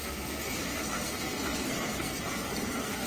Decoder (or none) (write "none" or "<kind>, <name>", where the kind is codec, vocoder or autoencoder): codec, SNAC